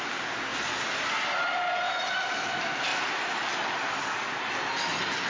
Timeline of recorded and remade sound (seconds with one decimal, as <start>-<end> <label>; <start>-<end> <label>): 0.0-5.3 recorded